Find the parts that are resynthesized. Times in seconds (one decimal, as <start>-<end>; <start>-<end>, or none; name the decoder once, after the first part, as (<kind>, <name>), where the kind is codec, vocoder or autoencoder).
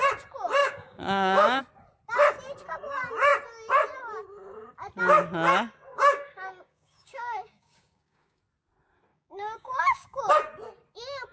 0.6-1.6 (codec, DAC); 5.9-8.4; 9.1-10.3